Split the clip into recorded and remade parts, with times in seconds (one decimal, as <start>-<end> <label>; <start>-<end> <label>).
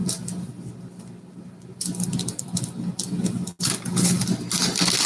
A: 0.0-5.1 recorded